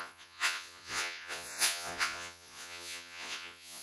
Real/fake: fake